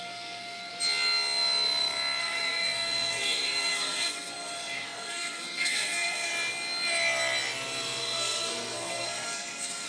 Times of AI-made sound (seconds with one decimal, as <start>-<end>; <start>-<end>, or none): 0.0-0.7; 2.2-6.3; 8.0-9.9